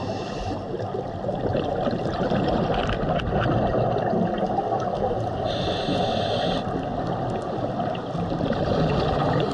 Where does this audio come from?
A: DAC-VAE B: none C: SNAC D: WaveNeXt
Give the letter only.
B